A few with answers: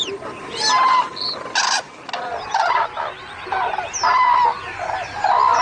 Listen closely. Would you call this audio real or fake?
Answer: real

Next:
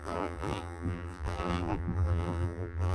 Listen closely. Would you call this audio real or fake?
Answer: fake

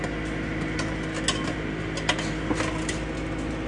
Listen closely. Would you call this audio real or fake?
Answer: real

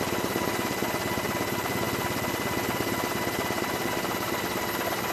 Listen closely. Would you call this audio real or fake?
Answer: real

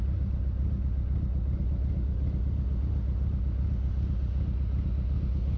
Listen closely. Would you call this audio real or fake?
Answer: real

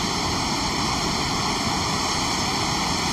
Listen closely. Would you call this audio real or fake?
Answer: real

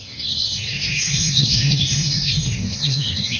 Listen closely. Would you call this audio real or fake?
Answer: fake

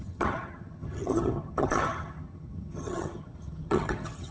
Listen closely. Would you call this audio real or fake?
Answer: fake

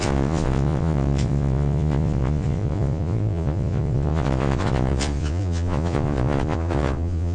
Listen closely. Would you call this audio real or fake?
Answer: fake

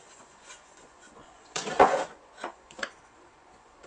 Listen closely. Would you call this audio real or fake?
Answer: fake